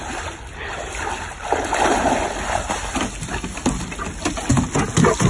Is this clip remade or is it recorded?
recorded